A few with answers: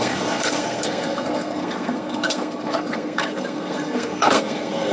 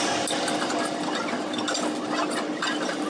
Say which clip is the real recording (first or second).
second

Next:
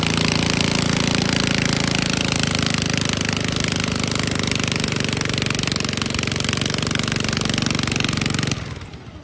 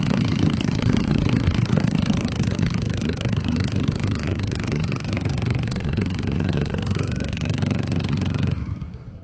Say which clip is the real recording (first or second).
first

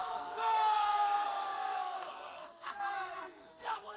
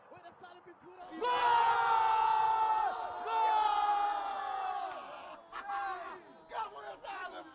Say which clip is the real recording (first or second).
second